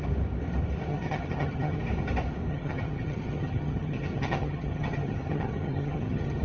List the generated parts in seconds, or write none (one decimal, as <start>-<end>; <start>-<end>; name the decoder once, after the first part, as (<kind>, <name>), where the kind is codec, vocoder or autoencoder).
0.9-1.8 (vocoder, HiFi-GAN); 2.5-6.4